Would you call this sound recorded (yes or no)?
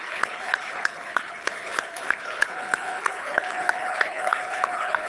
no